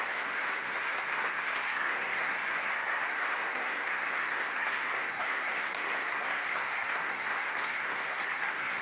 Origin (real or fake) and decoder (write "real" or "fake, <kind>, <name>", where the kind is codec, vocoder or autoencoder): fake, codec, SNAC